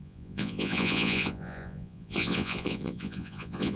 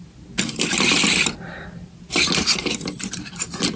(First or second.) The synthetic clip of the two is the first